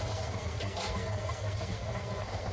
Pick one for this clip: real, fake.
fake